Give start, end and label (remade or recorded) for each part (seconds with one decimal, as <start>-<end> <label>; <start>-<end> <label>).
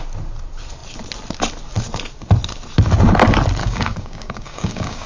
0.0-3.6 recorded; 3.6-5.1 remade